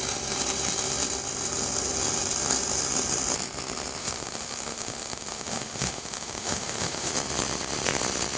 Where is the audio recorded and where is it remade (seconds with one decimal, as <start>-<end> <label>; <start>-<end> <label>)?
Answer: 0.0-4.0 recorded; 4.0-7.1 remade; 7.1-8.4 recorded